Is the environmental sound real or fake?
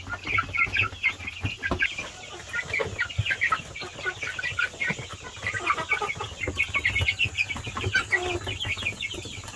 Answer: real